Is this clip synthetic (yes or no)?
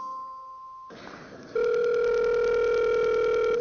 no